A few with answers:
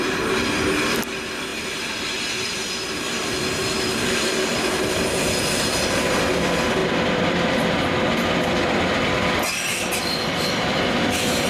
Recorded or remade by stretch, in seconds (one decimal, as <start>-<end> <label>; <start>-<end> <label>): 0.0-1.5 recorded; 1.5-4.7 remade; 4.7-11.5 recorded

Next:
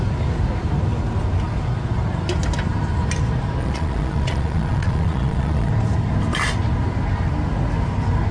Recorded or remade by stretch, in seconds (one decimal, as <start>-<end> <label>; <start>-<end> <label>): 0.0-3.6 recorded; 3.6-5.7 remade; 5.7-8.3 recorded

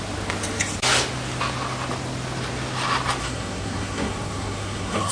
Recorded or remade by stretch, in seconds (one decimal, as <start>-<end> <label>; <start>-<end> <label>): 0.0-3.2 recorded; 3.2-5.1 remade

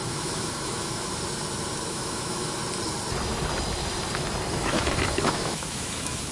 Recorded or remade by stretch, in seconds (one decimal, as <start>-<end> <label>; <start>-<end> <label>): 0.0-1.1 remade; 1.1-1.9 recorded; 1.9-2.6 remade; 2.6-4.5 recorded; 4.5-6.3 remade

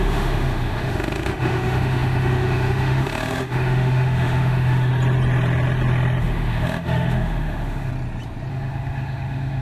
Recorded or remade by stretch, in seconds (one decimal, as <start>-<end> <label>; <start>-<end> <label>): 0.0-4.9 remade; 4.9-6.2 recorded; 6.2-7.9 remade; 7.9-8.5 recorded; 8.5-9.6 remade

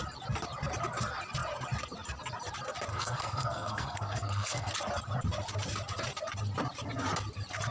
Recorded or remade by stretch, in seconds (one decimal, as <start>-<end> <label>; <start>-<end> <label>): 0.0-2.9 recorded; 2.9-4.7 remade; 4.7-7.7 recorded

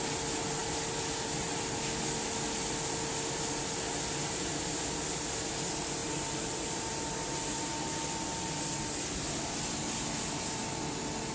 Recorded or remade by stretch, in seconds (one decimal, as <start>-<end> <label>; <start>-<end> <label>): 0.0-6.0 recorded; 6.0-6.9 remade; 6.9-11.3 recorded

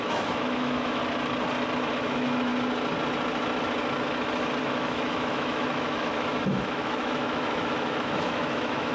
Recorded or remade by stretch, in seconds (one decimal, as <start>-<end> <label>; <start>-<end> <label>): 0.0-1.0 remade; 1.0-1.9 recorded; 1.9-2.5 remade; 2.5-4.6 recorded; 4.6-8.9 remade